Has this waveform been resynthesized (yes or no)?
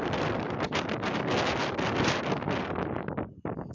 no